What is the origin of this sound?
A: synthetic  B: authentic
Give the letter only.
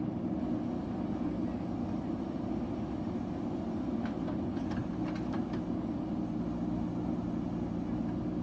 B